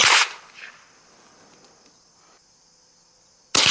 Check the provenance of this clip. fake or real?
real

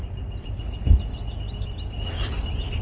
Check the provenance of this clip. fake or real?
real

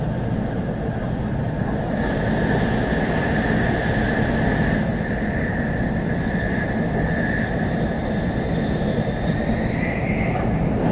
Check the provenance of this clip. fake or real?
real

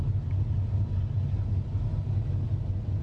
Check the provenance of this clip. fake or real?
real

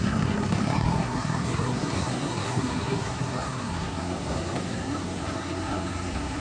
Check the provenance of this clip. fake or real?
fake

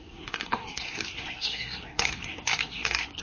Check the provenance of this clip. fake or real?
fake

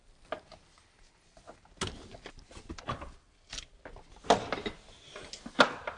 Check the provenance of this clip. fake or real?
real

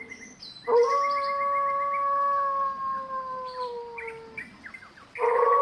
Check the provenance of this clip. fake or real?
real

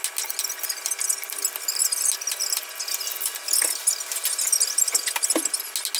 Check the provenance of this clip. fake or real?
real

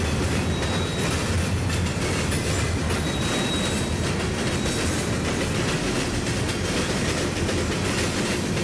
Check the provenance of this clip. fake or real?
real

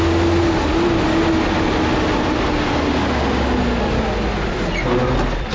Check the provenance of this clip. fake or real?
real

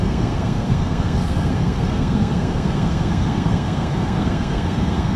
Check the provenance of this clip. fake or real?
fake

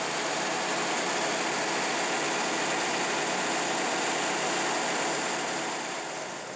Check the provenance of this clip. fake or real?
real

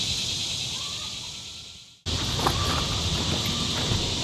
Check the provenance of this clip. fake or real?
real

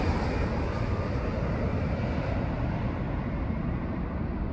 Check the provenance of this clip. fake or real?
real